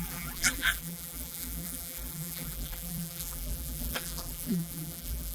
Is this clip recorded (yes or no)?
no